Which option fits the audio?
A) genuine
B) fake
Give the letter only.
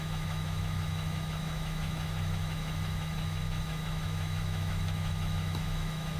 B